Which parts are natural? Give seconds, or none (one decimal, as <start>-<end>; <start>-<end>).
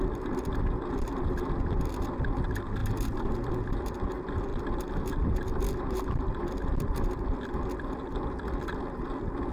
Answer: 0.0-4.5; 6.4-9.5